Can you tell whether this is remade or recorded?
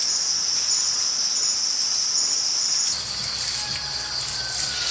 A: recorded